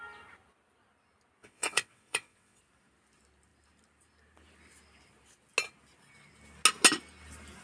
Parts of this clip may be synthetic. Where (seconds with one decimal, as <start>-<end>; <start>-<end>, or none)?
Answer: 1.4-2.6